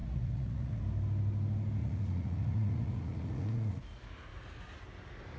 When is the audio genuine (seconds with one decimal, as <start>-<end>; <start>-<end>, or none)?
0.8-1.8; 3.8-5.4